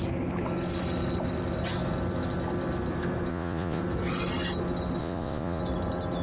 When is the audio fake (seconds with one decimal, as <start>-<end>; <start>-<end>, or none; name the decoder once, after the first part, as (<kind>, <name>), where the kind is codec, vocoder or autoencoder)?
3.3-3.8 (vocoder, Vocos); 5.0-5.6